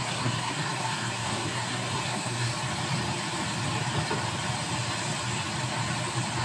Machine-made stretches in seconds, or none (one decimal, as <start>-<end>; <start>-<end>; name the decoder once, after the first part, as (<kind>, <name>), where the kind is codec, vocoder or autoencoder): 0.0-2.5 (codec, SNAC)